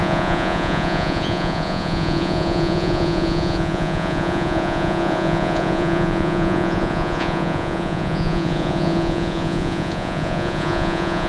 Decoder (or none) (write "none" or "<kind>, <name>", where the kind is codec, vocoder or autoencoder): vocoder, Vocos